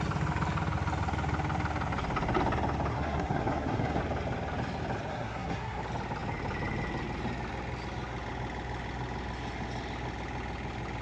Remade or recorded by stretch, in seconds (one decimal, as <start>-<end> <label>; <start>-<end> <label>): 0.0-2.9 recorded; 2.9-4.0 remade; 4.0-5.1 recorded; 5.1-5.8 remade; 5.8-11.0 recorded